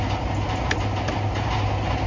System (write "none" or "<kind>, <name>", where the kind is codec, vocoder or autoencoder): none